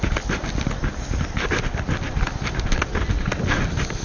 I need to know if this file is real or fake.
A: real